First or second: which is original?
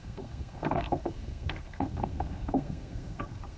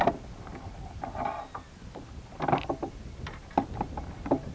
second